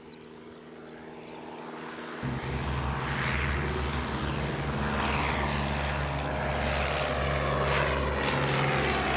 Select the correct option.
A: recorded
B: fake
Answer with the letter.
A